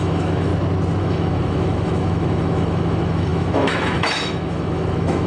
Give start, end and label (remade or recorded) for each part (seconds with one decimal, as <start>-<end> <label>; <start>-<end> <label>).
0.0-0.5 remade; 0.5-1.0 recorded; 1.0-5.3 remade